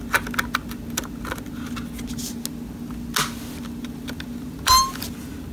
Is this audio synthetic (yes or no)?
no